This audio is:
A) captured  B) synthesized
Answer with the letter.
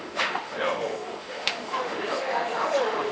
B